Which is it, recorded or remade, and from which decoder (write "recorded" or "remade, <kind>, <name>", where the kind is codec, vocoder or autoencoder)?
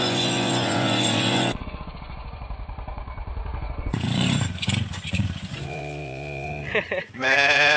remade, vocoder, Vocos